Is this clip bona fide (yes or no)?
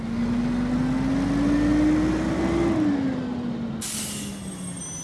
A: yes